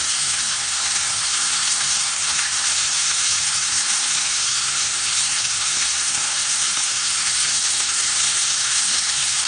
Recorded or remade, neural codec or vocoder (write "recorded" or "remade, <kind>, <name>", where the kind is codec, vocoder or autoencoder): remade, codec, SNAC